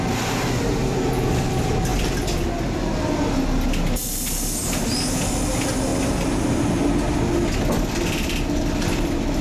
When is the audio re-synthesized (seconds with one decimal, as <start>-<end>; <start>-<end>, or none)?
none